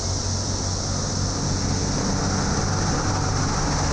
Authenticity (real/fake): real